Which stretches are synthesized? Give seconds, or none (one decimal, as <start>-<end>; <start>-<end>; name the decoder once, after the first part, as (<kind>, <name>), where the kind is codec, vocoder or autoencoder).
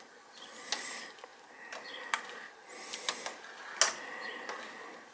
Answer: none